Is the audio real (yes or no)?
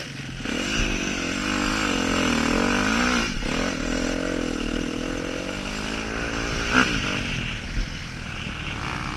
yes